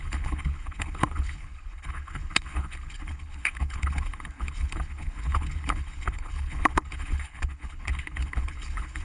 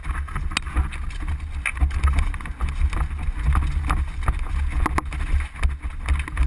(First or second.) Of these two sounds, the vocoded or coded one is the first